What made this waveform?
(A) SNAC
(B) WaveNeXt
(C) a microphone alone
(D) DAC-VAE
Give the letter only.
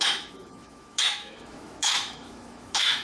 D